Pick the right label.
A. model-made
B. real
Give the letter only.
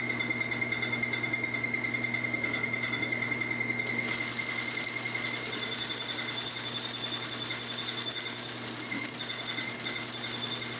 B